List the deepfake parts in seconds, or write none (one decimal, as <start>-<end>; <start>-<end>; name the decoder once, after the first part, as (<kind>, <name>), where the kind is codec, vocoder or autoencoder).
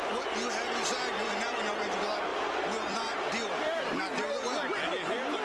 2.3-3.8 (vocoder, BigVGAN v2)